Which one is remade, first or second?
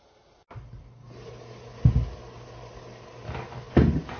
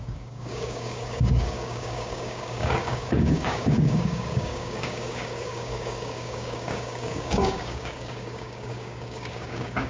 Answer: second